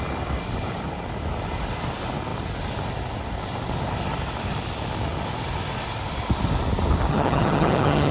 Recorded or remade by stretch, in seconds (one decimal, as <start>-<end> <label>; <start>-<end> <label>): 0.0-7.1 recorded; 7.1-8.1 remade